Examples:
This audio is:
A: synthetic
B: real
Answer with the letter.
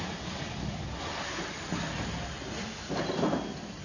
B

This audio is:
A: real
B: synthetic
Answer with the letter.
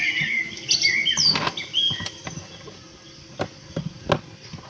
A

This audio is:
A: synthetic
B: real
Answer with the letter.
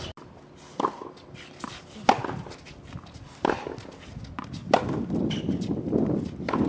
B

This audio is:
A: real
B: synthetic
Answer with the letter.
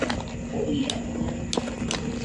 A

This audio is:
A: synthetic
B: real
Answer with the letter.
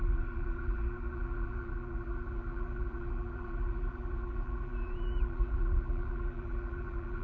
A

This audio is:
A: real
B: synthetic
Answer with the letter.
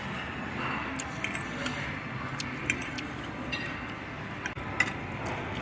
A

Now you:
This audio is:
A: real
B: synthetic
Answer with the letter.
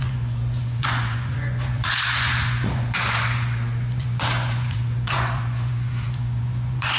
B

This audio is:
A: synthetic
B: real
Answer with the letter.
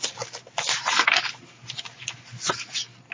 B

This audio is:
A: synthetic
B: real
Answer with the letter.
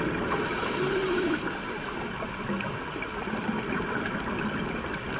B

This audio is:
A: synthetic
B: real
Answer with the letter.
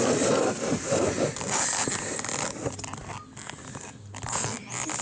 B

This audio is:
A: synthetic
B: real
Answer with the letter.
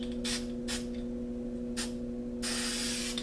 B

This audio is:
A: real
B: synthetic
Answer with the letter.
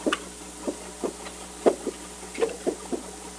A